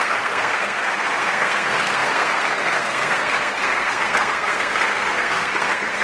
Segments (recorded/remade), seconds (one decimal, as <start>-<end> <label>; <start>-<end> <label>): 0.0-6.0 remade